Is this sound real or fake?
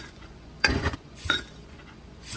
fake